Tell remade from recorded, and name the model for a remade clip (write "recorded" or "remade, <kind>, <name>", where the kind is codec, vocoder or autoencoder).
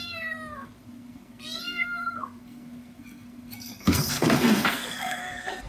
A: remade, codec, SNAC